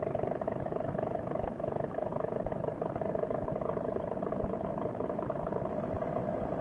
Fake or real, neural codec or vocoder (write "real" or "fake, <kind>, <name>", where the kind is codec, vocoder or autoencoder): fake, vocoder, BigVGAN v2